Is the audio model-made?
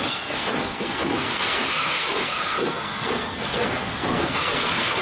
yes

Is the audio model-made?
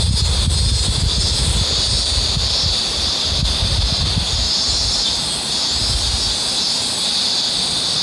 no